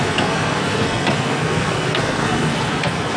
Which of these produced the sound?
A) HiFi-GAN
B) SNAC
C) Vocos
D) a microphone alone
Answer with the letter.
B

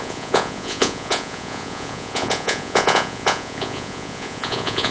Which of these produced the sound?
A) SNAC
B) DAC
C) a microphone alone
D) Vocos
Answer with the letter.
D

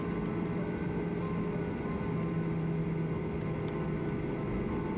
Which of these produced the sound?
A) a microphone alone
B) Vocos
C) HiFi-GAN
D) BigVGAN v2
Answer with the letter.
A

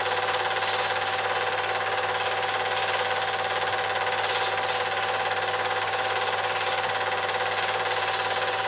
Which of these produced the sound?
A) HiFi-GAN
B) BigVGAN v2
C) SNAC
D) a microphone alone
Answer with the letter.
D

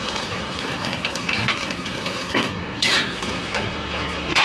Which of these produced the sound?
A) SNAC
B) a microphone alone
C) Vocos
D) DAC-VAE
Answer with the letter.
A